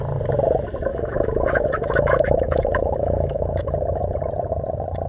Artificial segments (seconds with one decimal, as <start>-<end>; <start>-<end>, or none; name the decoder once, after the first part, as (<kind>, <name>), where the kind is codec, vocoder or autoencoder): 0.9-4.0 (autoencoder, DAC-VAE)